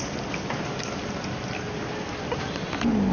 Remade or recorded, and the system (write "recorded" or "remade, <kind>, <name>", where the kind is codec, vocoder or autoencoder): recorded